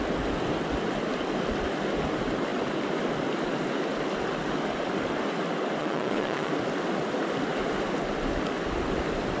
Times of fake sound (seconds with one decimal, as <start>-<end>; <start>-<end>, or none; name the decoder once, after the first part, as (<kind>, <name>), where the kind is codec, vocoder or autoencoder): 5.8-6.5 (vocoder, Vocos)